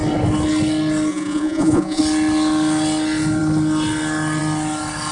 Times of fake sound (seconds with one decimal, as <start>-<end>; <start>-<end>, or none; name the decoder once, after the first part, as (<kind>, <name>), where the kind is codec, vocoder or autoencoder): 1.1-2.0 (vocoder, Vocos)